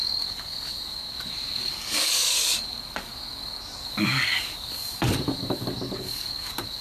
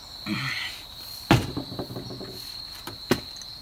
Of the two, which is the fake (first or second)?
first